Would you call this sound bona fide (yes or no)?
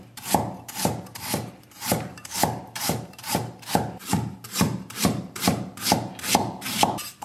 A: no